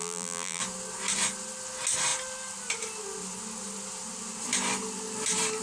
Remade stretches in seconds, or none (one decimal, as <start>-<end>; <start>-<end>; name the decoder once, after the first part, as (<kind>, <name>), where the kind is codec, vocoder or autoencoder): 0.0-0.6 (vocoder, BigVGAN v2)